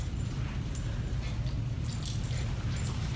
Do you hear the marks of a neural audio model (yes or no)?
no